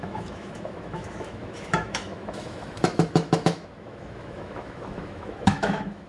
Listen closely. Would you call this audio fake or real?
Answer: fake